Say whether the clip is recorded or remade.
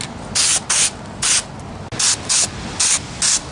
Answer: recorded